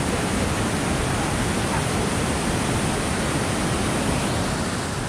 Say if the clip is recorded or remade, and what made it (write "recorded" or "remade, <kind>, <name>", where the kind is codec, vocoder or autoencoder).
recorded